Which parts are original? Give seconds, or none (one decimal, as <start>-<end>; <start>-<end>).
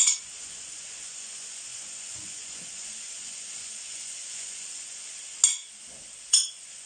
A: 5.2-6.2